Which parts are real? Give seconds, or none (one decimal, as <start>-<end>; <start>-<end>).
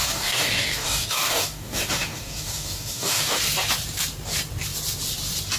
3.4-5.6